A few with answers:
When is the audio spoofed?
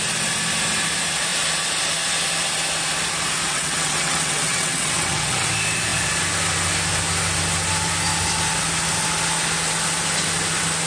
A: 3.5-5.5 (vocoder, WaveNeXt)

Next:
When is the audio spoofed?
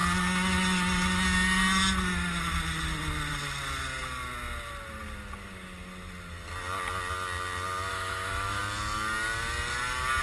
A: 7.9-8.6 (autoencoder, DAC-VAE)